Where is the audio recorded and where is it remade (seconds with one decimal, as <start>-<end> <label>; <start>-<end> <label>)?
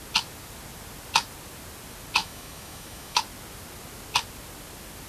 0.0-2.2 recorded; 2.2-3.2 remade; 3.2-5.1 recorded